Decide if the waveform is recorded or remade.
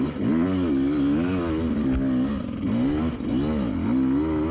recorded